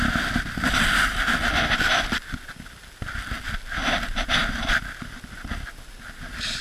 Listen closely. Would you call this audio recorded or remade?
recorded